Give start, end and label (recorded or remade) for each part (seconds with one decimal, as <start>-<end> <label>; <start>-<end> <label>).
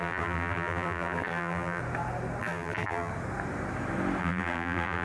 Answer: 0.0-1.8 remade; 1.8-2.4 recorded; 2.4-3.1 remade; 3.1-4.2 recorded; 4.2-5.0 remade